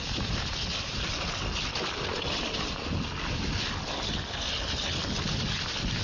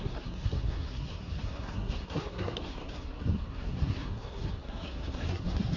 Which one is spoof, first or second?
second